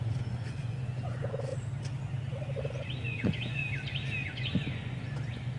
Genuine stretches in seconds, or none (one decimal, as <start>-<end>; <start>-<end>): 1.5-2.6; 3.6-4.3